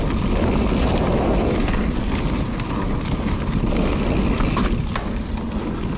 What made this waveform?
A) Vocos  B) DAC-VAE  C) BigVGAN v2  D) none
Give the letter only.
D